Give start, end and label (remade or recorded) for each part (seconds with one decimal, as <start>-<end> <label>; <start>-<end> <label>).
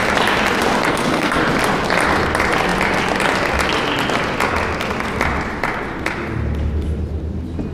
0.0-0.9 recorded; 0.9-1.4 remade; 1.4-7.7 recorded